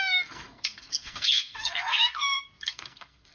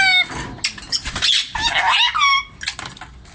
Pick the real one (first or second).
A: second